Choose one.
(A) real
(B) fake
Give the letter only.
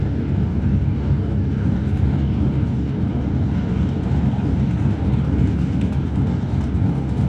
B